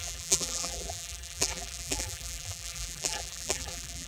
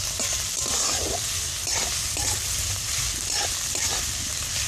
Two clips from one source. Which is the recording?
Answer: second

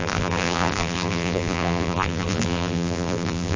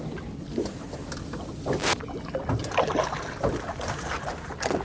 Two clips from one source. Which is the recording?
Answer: second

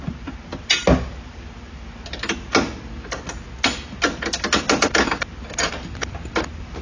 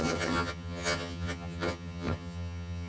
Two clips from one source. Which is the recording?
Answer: first